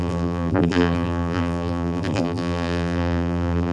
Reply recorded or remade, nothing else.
remade